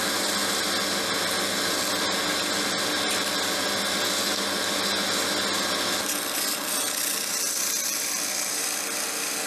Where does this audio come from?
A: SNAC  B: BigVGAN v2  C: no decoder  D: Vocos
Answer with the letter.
C